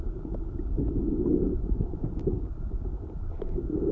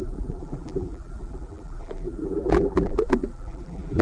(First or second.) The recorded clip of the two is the first